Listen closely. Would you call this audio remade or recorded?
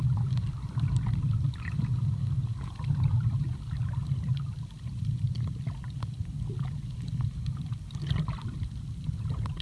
remade